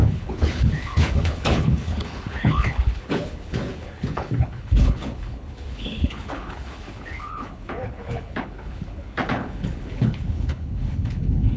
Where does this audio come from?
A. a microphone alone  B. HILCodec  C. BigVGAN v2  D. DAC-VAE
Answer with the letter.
B